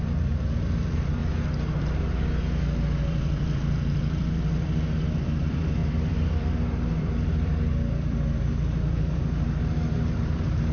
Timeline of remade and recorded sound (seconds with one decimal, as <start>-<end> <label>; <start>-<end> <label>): 0.0-1.2 remade; 1.2-2.8 recorded; 2.8-10.7 remade